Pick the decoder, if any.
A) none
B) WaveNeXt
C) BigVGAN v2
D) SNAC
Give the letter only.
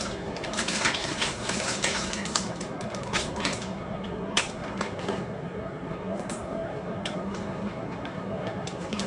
D